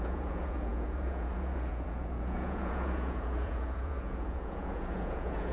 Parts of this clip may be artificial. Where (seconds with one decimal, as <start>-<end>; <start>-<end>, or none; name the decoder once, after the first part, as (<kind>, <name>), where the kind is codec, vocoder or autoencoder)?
0.0-5.5 (vocoder, Vocos)